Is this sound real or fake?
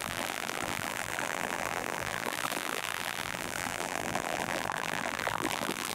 fake